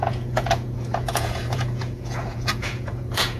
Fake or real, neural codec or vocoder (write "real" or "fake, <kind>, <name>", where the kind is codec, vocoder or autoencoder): fake, vocoder, Vocos